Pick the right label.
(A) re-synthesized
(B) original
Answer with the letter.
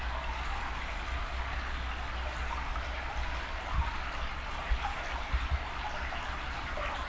B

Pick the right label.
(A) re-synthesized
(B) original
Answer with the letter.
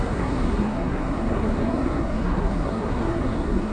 A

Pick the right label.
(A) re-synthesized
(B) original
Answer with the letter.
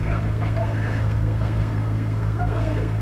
A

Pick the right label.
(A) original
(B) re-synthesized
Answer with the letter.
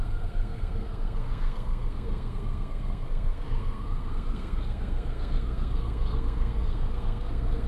B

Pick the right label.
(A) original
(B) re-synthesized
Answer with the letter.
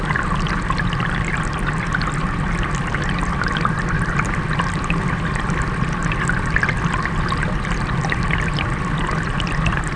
A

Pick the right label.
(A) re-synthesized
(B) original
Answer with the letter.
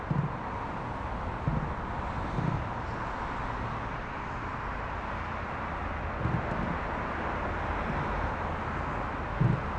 B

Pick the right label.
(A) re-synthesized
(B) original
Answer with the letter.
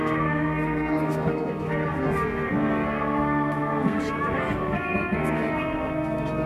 A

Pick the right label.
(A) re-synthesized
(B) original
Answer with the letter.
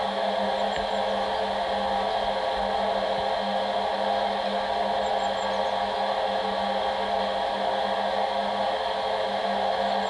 B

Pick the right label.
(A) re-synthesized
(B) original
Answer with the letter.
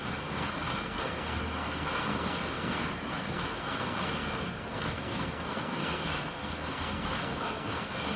A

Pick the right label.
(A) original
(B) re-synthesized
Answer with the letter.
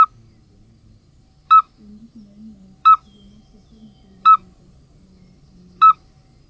A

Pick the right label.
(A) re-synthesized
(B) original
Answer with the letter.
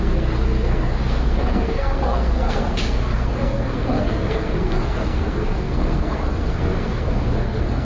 A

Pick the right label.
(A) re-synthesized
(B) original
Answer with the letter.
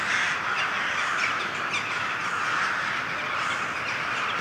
B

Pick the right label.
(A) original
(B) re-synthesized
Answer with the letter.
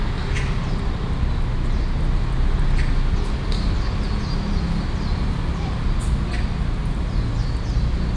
A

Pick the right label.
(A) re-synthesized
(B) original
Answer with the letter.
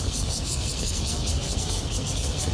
A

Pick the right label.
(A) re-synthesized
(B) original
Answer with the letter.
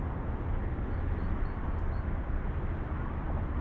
B